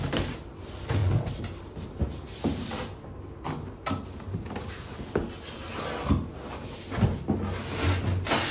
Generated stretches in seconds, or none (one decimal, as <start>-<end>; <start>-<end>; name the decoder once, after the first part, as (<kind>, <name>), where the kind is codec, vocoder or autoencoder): none

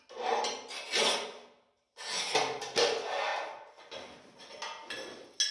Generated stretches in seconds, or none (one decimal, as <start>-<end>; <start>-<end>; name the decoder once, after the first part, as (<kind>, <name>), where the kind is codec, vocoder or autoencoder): none

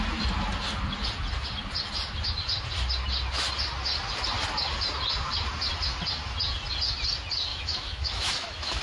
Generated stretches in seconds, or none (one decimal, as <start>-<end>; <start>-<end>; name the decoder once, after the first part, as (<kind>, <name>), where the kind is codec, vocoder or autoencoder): 7.5-8.8 (autoencoder, DAC-VAE)

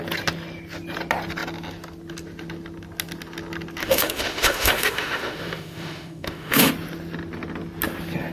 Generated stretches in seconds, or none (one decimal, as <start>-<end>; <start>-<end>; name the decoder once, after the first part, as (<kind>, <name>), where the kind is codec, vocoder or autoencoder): 3.8-6.7 (autoencoder, DAC-VAE)

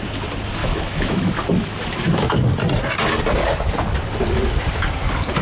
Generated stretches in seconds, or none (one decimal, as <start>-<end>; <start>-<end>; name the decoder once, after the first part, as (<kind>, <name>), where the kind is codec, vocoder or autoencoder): 0.6-1.3 (autoencoder, DAC-VAE)

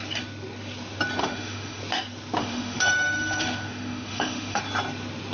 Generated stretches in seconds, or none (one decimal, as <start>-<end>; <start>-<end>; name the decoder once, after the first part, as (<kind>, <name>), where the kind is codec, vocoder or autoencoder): 1.2-1.8 (autoencoder, DAC-VAE); 2.4-4.6

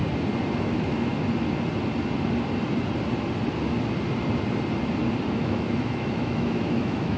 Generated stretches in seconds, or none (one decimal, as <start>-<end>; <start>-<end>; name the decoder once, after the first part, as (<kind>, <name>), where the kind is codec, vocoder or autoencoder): 0.6-1.1 (autoencoder, DAC-VAE); 5.3-7.2